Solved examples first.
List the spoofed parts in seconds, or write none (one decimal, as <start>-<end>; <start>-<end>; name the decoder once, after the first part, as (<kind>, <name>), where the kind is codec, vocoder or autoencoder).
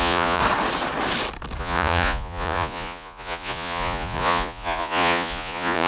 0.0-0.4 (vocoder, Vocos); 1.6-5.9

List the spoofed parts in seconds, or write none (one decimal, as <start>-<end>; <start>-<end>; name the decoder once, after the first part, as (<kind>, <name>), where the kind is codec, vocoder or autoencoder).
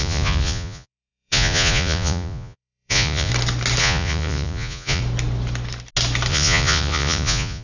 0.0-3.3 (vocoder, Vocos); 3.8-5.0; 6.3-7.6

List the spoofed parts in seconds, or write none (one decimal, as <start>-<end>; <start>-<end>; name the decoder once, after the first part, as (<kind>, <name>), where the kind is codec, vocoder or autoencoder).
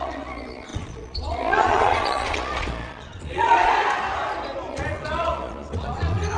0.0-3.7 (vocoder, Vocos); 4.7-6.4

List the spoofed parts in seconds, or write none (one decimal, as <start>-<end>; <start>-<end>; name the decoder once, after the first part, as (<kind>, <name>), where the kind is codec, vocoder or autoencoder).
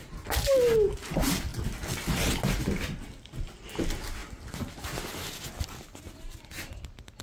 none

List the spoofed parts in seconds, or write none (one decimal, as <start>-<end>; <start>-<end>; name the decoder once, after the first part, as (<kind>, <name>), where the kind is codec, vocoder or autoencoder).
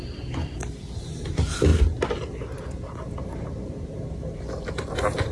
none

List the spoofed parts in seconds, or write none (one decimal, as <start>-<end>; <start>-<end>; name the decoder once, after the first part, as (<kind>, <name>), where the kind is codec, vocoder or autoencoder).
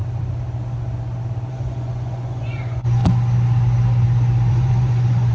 1.5-3.0 (vocoder, Vocos); 4.5-5.3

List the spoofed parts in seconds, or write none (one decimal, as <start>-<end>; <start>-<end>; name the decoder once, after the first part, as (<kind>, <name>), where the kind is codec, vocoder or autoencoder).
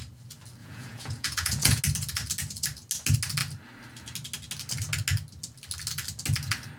0.6-1.8 (vocoder, Vocos)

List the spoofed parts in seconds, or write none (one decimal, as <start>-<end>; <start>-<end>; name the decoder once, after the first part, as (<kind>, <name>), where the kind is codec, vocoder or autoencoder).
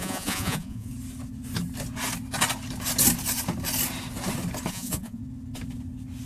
0.0-0.9 (vocoder, Vocos); 4.7-5.2